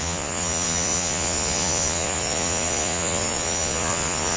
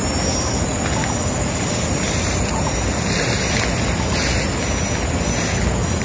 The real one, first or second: second